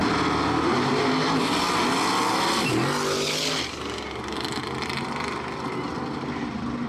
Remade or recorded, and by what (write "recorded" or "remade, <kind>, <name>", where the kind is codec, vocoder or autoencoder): recorded